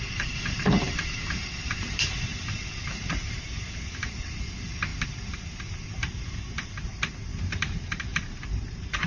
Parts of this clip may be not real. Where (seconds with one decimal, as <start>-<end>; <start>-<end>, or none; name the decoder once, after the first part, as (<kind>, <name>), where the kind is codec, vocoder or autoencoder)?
0.0-9.1 (vocoder, BigVGAN v2)